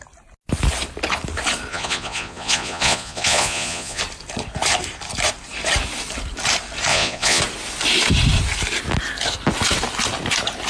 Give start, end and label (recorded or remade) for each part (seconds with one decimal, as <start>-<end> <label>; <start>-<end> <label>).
0.0-1.7 recorded; 1.7-4.0 remade; 4.0-6.9 recorded; 6.9-7.4 remade; 7.4-10.7 recorded